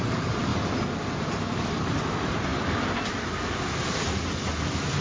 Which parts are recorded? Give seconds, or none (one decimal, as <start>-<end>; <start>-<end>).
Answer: 0.5-1.3